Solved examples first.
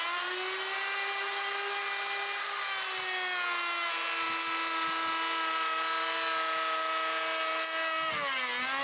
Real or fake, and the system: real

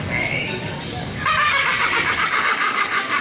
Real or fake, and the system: fake, codec, DAC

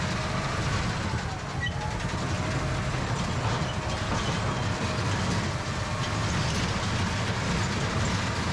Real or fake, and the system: real